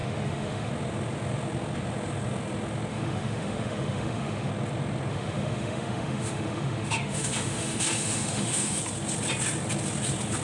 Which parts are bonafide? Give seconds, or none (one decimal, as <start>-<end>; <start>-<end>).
0.7-2.9; 4.5-5.1; 8.8-10.4

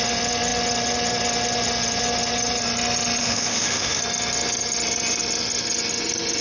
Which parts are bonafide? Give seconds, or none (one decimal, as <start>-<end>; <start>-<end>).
0.0-3.2; 4.0-6.4